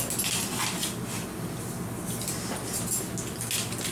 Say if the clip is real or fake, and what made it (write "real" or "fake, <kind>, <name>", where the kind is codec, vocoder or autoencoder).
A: real